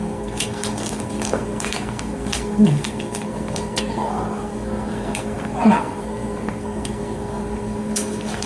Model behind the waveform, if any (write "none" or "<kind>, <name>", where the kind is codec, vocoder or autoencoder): codec, SNAC